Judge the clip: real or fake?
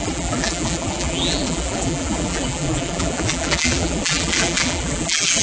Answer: fake